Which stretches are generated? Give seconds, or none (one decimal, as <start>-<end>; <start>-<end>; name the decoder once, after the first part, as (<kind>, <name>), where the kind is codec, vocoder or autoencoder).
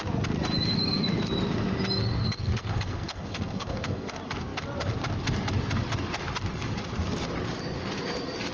2.2-4.1 (codec, SNAC)